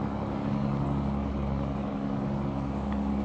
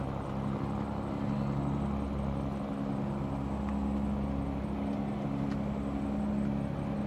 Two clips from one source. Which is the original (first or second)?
second